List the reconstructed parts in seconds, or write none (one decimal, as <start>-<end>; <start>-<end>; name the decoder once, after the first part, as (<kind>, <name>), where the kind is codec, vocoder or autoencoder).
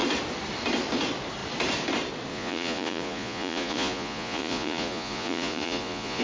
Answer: 2.3-6.2 (vocoder, Vocos)